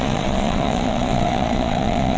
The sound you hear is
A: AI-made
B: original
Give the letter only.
A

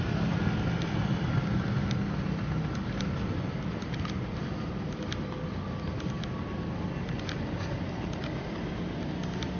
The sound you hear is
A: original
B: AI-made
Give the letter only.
A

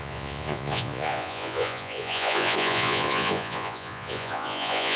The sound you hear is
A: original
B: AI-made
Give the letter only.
B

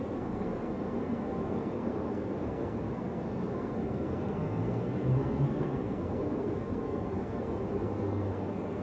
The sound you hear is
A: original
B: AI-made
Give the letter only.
B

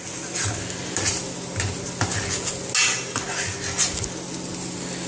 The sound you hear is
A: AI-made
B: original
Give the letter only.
B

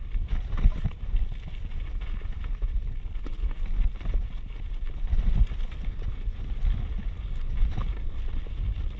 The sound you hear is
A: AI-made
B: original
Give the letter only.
B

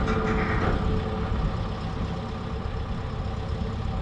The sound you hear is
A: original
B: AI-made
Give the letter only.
A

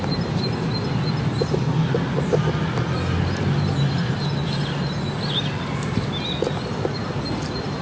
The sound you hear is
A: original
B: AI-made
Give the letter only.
A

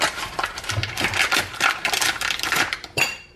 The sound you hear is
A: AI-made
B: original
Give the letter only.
B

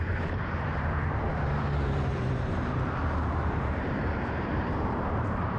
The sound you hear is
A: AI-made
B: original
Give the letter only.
A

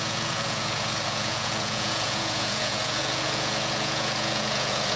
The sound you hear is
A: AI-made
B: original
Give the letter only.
A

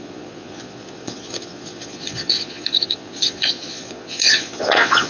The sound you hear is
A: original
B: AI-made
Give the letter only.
B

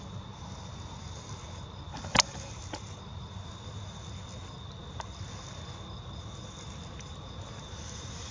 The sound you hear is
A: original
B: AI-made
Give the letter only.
A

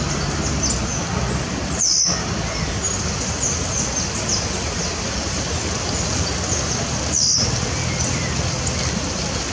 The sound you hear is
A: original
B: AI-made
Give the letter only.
A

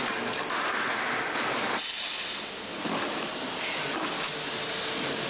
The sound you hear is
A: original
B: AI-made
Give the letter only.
A